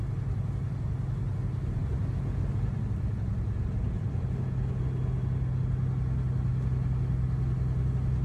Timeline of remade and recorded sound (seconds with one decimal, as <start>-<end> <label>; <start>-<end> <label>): 0.0-8.2 recorded